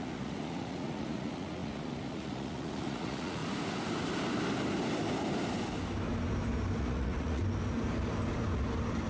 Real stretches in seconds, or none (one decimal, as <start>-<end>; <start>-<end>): 3.4-6.8; 7.4-9.1

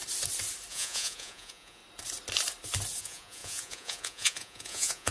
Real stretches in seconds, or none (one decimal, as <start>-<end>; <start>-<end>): 0.0-0.7; 1.8-3.0

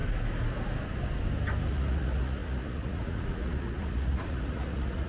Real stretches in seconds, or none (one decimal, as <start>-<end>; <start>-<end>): 0.0-1.7

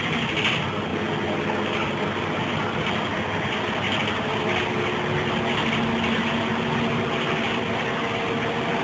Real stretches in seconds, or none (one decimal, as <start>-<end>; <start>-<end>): 0.0-8.8

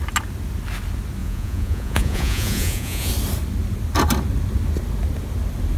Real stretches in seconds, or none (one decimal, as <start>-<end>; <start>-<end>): 0.0-1.2; 3.1-5.8

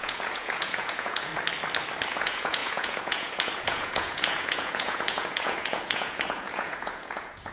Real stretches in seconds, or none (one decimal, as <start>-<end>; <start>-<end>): 1.3-2.1

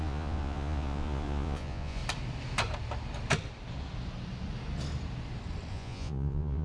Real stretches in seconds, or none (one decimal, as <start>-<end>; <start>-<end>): 2.0-5.7